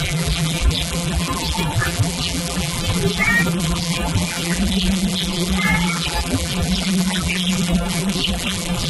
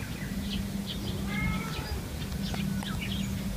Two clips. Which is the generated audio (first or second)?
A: first